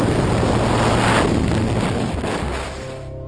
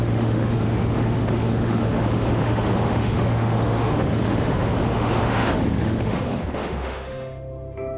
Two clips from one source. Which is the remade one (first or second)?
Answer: second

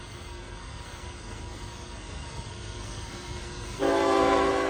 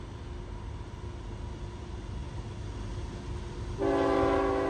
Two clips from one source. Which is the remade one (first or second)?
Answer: first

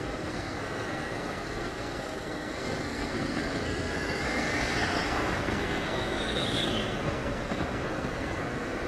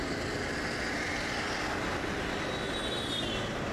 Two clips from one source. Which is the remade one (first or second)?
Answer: first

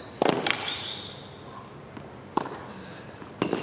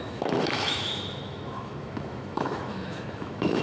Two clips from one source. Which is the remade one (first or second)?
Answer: second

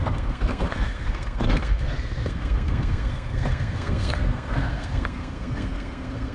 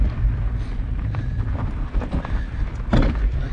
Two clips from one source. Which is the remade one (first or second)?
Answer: first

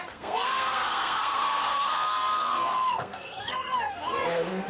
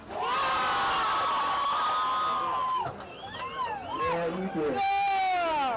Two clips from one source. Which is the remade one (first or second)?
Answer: first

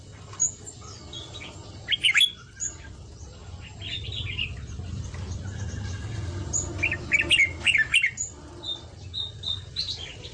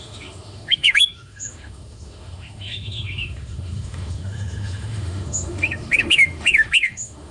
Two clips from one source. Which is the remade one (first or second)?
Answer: second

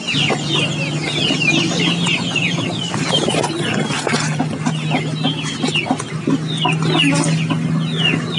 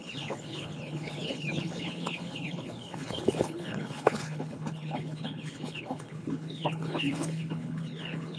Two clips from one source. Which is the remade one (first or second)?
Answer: second